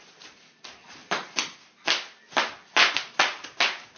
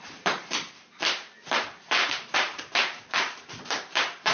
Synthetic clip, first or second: second